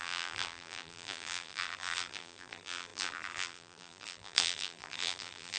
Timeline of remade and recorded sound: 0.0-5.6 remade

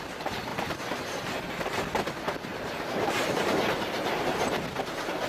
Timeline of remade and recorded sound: 0.0-0.5 recorded; 0.5-1.5 remade; 1.5-2.5 recorded; 2.5-3.5 remade; 3.5-5.3 recorded

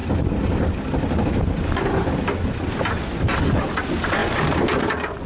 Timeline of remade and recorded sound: 0.0-4.2 remade; 4.2-4.8 recorded; 4.8-5.3 remade

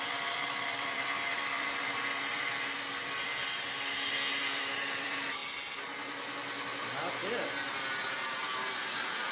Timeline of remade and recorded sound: 0.0-3.3 remade; 3.3-4.6 recorded; 4.6-5.4 remade; 5.4-8.1 recorded; 8.1-9.3 remade

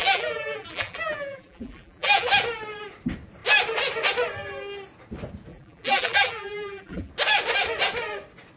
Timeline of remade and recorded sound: 0.0-2.3 remade; 2.3-5.5 recorded; 5.5-7.1 remade; 7.1-8.6 recorded

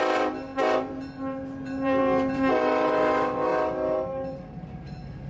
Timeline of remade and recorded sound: 0.0-5.3 remade

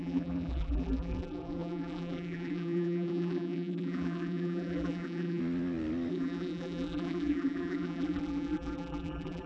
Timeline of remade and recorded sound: 0.0-5.4 remade; 5.4-6.1 recorded; 6.1-9.5 remade